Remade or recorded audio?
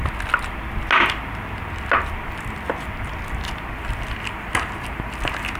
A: recorded